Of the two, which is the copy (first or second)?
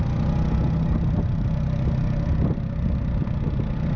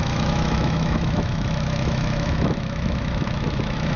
second